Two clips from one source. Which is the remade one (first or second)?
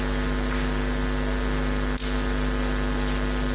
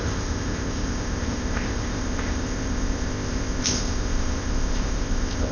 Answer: second